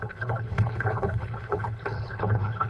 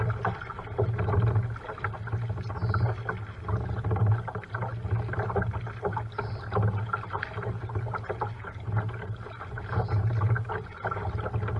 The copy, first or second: first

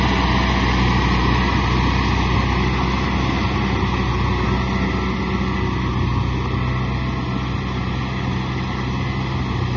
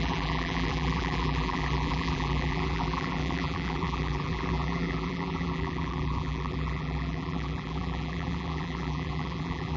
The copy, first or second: second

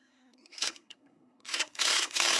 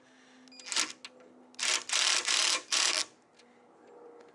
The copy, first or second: first